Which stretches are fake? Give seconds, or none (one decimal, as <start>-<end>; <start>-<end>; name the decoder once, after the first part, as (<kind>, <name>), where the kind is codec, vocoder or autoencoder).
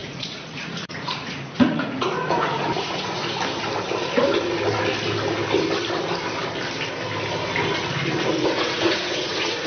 0.0-3.2 (vocoder, Vocos); 8.2-9.7